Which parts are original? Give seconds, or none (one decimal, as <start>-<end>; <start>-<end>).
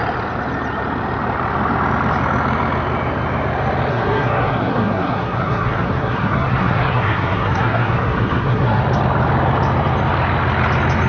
0.0-3.9; 8.8-11.1